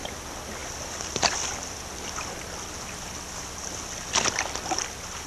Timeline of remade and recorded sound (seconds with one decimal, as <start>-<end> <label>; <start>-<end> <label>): 0.0-5.3 recorded